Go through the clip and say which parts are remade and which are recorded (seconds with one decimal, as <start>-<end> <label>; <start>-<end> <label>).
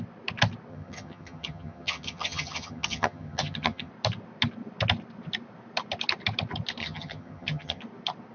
0.0-0.7 recorded; 0.7-3.9 remade; 3.9-6.8 recorded; 6.8-7.8 remade; 7.8-8.3 recorded